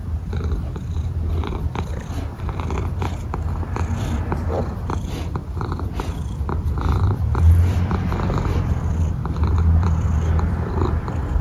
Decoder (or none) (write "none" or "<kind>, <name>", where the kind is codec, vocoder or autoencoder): vocoder, BigVGAN v2